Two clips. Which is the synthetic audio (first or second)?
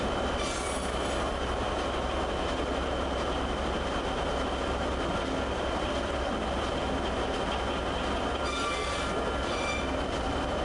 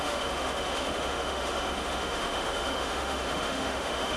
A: second